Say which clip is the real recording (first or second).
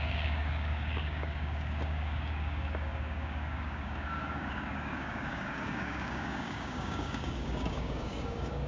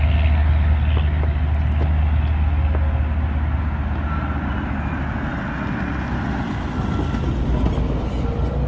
second